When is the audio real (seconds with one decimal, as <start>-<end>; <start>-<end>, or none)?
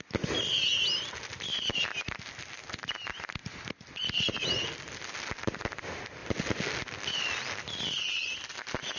0.0-9.0